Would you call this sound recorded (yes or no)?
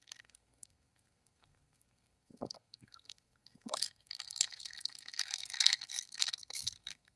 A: no